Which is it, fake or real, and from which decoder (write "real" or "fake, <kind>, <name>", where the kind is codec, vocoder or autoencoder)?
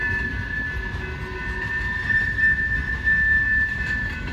real